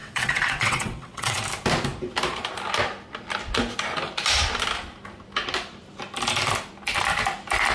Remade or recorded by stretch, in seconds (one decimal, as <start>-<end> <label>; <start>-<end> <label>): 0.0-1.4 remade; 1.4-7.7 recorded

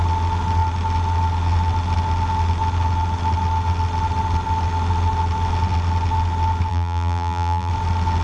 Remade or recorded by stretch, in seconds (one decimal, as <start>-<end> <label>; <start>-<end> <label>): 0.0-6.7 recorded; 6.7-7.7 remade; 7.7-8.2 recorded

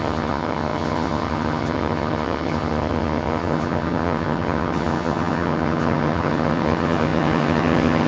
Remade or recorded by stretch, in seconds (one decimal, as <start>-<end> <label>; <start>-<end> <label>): 0.0-8.1 remade

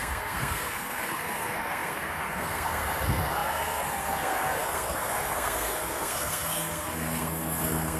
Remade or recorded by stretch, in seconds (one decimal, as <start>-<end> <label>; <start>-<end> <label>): 0.0-8.0 remade

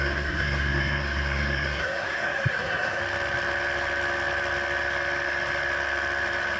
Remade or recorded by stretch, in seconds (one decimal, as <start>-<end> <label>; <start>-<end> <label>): 0.0-3.0 remade; 3.0-6.6 recorded